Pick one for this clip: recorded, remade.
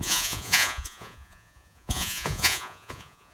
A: remade